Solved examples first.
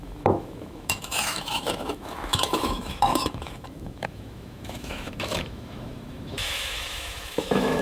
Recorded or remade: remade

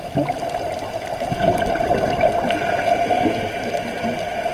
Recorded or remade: recorded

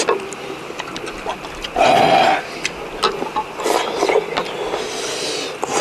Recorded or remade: recorded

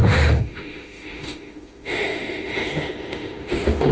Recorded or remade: remade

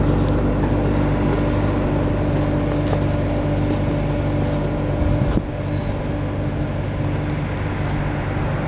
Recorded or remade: recorded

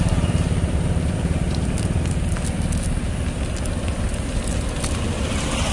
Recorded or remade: recorded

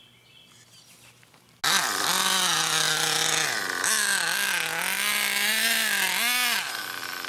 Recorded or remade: recorded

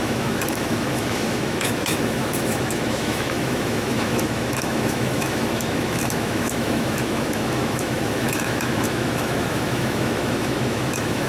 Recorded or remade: remade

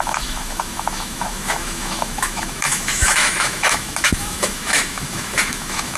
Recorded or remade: remade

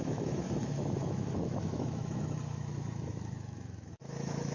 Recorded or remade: remade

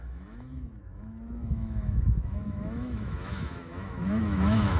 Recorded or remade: remade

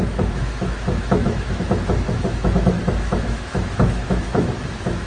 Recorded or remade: remade